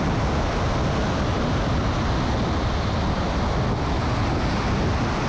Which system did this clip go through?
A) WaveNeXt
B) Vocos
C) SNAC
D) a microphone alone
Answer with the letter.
D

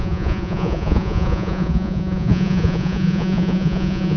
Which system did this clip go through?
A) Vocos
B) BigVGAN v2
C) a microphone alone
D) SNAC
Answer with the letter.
A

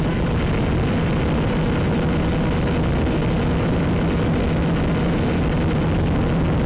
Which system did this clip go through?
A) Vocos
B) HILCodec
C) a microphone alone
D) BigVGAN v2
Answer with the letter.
C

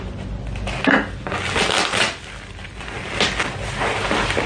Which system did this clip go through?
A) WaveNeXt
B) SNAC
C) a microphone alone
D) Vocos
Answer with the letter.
C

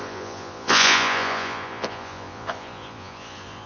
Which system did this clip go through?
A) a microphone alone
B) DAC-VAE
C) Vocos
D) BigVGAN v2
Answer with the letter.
C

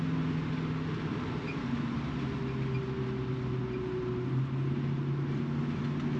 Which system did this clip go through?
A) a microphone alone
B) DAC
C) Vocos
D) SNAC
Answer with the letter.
A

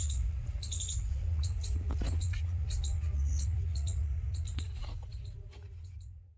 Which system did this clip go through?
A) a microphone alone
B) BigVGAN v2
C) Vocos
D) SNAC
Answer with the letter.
C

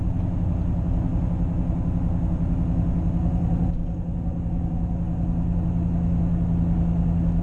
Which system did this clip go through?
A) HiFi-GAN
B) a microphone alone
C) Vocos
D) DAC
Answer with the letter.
B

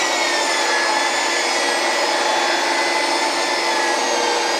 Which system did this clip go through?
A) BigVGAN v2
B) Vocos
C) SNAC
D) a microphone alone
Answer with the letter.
D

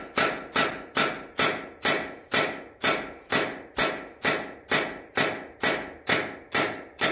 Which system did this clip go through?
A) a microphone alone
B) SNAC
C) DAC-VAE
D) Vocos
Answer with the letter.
A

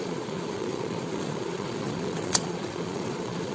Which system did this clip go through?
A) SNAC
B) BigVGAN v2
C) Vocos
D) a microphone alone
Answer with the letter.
C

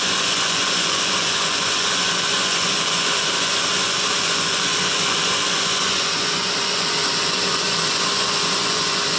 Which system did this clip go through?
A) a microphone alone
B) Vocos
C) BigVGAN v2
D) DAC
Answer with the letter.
B